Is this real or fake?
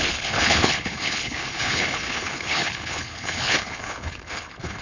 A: fake